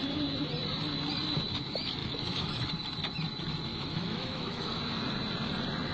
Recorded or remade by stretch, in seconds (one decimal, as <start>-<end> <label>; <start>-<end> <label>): 0.0-2.0 recorded; 2.0-2.7 remade; 2.7-3.7 recorded; 3.7-4.8 remade; 4.8-5.9 recorded